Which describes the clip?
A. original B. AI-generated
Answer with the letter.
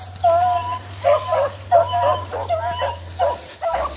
A